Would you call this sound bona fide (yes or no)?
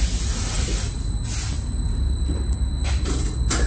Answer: yes